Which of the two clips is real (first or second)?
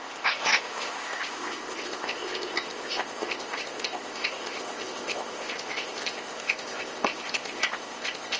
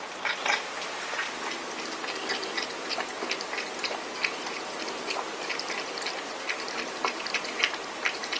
second